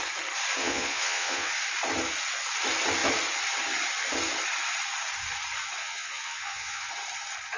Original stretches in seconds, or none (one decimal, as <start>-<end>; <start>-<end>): 0.0-0.6; 1.5-5.8; 6.9-7.6